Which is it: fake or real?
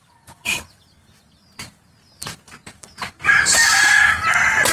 real